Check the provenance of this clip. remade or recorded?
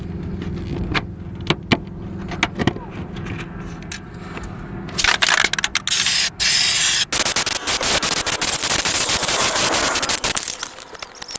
recorded